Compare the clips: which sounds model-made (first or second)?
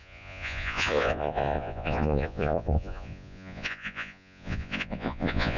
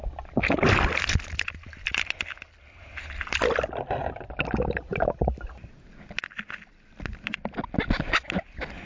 first